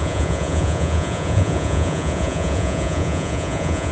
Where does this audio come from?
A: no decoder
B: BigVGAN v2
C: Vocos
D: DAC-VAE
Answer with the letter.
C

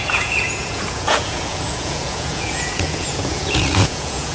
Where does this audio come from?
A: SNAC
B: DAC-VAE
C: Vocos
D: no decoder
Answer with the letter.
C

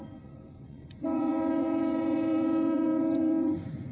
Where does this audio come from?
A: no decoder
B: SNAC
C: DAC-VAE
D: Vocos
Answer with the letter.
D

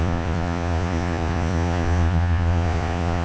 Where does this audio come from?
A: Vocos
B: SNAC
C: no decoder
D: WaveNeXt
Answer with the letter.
A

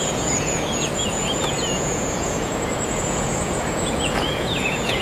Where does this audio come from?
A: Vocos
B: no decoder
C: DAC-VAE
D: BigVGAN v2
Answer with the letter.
A